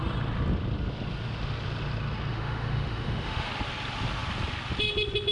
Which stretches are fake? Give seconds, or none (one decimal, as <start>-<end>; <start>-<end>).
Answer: 2.3-3.5